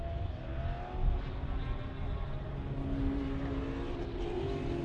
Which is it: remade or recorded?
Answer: recorded